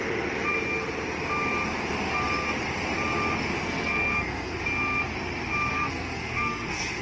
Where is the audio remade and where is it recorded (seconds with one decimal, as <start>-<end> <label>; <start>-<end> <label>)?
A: 0.0-3.6 recorded; 3.6-4.6 remade; 4.6-5.7 recorded; 5.7-7.0 remade